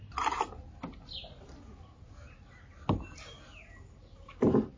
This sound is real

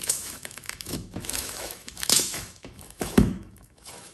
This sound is fake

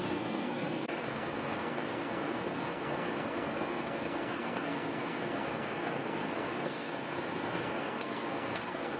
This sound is fake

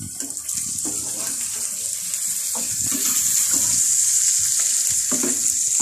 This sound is real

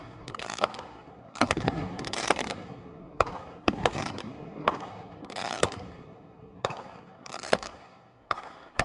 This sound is fake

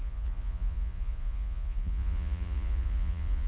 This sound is fake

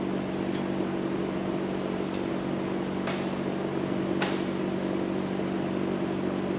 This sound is real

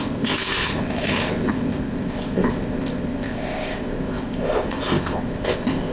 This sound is fake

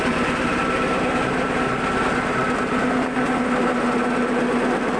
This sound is real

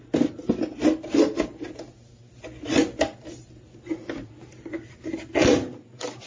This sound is real